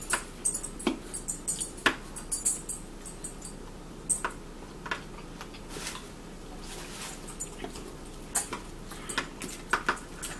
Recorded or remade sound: recorded